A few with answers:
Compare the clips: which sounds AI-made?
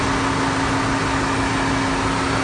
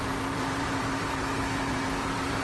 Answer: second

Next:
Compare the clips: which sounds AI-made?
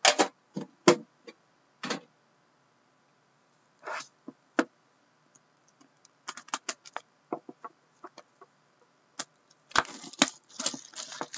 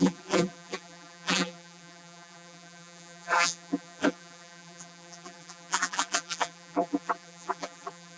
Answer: second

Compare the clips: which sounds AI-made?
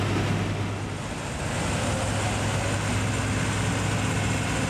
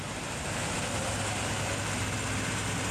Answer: second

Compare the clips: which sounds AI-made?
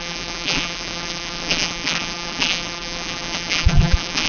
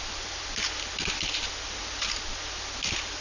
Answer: first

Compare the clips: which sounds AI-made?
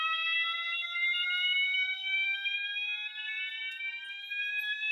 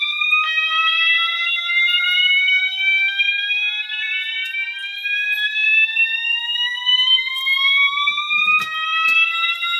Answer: second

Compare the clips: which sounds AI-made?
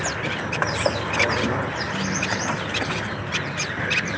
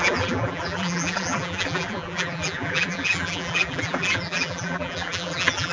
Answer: second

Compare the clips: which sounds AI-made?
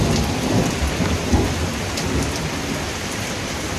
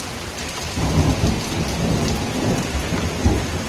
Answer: first